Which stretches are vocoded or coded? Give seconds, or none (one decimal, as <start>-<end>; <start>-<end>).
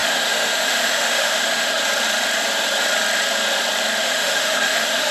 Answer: 0.0-1.8; 4.0-5.1